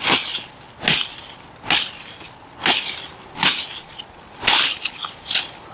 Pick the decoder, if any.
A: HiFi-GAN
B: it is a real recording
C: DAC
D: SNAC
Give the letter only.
B